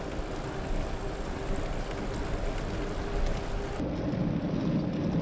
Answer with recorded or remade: recorded